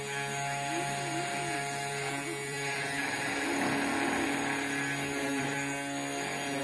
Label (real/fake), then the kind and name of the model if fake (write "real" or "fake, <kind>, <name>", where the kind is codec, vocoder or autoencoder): real